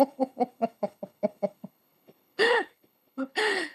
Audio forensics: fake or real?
fake